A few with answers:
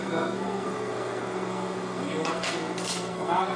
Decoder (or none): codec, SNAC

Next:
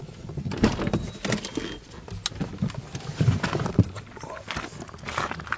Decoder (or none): none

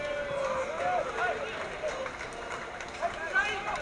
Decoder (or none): none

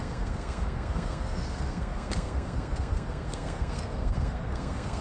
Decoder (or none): codec, SNAC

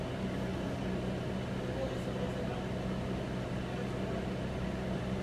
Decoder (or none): none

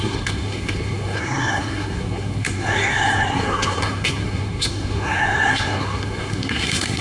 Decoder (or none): codec, SNAC